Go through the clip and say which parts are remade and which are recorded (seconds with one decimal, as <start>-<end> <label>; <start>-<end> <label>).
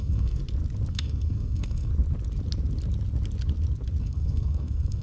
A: 0.0-0.4 remade; 0.4-0.9 recorded; 0.9-1.9 remade; 1.9-4.0 recorded; 4.0-5.0 remade